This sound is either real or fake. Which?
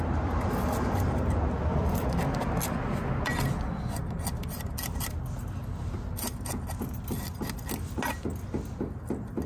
real